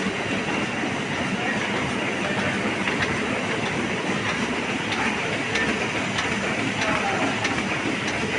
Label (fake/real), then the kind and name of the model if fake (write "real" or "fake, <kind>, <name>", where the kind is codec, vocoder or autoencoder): real